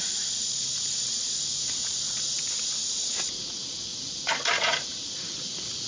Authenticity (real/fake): fake